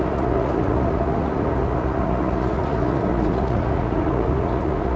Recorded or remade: remade